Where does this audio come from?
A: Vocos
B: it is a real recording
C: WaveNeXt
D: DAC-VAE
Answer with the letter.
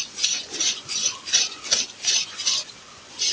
A